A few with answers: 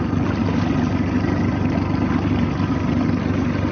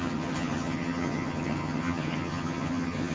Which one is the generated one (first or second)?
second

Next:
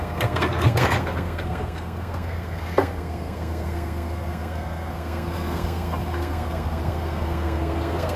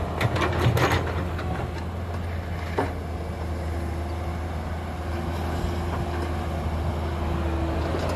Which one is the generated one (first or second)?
first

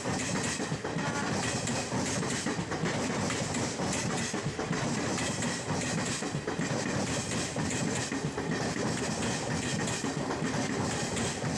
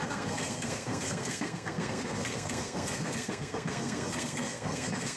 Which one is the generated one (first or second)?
second